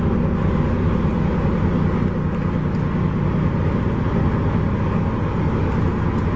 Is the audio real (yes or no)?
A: yes